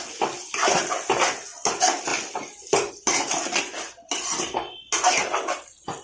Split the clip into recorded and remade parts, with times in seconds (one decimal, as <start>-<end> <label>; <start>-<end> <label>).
0.0-6.0 recorded